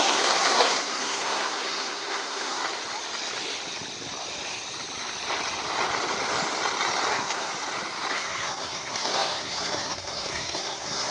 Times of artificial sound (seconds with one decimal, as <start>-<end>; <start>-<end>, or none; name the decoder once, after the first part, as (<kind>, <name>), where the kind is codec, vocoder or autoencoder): 0.0-2.6 (codec, SNAC); 7.1-7.5; 8.1-11.1